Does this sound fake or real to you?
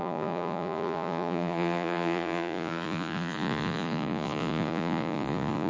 fake